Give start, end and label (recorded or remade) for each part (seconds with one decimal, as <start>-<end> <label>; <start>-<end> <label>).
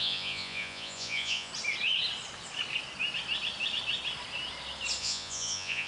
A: 0.0-1.5 remade; 1.5-5.0 recorded; 5.0-5.9 remade